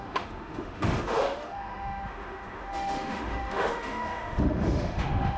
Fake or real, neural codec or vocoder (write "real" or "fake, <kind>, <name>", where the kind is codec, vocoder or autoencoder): fake, autoencoder, DAC-VAE